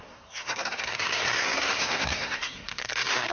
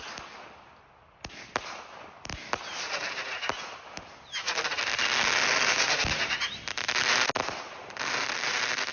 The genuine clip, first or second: second